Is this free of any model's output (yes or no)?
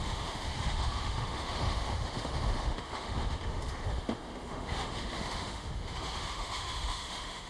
no